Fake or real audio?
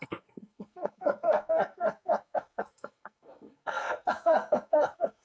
fake